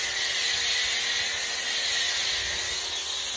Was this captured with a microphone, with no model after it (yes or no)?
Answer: yes